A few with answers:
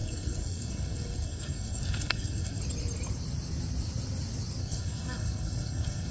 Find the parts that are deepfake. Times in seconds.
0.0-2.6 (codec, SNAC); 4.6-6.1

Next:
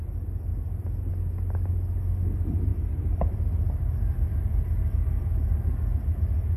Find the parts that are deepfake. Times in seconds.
2.7-5.3 (vocoder, BigVGAN v2)

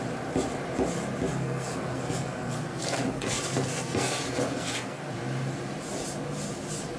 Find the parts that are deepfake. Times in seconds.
1.3-5.1 (codec, SNAC)